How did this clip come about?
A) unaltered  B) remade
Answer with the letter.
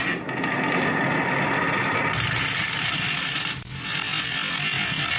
A